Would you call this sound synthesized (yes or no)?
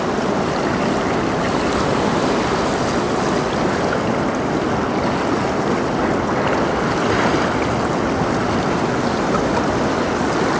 no